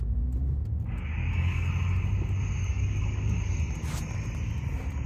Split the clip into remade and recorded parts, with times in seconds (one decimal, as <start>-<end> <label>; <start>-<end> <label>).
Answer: 0.0-1.2 recorded; 1.2-1.7 remade; 1.7-2.6 recorded; 2.6-3.6 remade; 3.6-5.1 recorded